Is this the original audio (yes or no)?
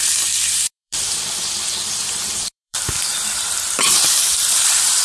no